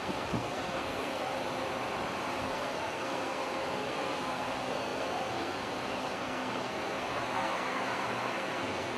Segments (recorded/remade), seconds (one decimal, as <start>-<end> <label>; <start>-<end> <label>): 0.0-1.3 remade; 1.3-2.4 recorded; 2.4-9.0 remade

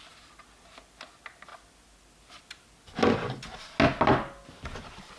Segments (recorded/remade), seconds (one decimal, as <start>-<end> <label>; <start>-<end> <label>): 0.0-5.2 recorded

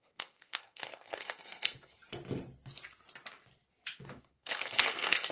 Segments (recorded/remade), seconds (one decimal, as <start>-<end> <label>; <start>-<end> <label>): 0.0-2.0 remade; 2.0-4.2 recorded; 4.2-5.3 remade

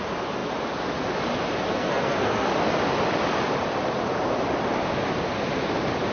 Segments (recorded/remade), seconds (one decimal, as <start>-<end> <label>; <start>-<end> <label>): 0.0-1.7 recorded; 1.7-2.5 remade; 2.5-6.1 recorded

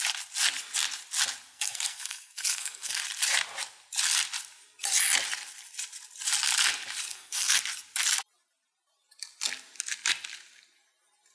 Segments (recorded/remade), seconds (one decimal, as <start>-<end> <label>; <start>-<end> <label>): 0.0-1.5 recorded; 1.5-3.0 remade; 3.0-7.1 recorded; 7.1-7.6 remade; 7.6-11.3 recorded

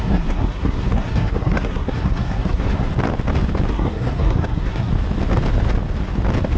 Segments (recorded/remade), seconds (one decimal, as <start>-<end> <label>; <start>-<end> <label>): 0.0-2.9 remade; 2.9-3.7 recorded; 3.7-4.9 remade; 4.9-6.6 recorded

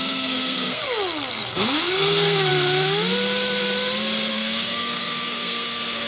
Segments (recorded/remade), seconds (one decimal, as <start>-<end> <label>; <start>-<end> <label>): 0.0-0.8 remade; 0.8-1.3 recorded; 1.3-2.5 remade; 2.5-4.3 recorded; 4.3-6.1 remade

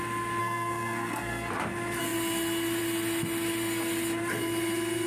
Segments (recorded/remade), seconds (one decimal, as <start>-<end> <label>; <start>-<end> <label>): 0.0-0.4 recorded; 0.4-1.5 remade; 1.5-5.1 recorded